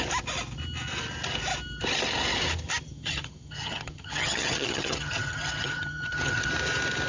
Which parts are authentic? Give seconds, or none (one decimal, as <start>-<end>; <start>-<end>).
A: 0.0-2.9; 6.5-7.1